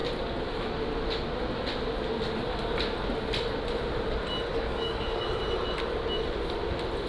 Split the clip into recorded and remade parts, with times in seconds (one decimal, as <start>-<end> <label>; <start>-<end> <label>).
0.0-4.5 recorded; 4.5-5.4 remade; 5.4-7.1 recorded